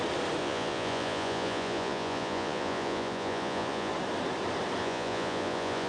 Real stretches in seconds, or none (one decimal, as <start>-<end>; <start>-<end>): 0.0-0.4; 3.9-4.8